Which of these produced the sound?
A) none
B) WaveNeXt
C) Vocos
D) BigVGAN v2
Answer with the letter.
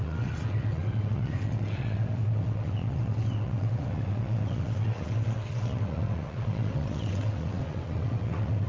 B